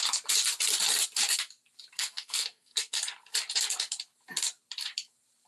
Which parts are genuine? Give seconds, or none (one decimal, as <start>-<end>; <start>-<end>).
0.0-2.0; 3.0-5.5